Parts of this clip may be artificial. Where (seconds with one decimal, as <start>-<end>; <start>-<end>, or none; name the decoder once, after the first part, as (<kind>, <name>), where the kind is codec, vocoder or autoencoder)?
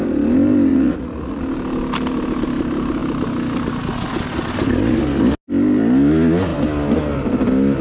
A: 0.7-1.4 (vocoder, Vocos)